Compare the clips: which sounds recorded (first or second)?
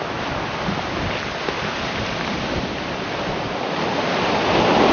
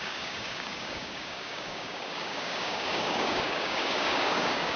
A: first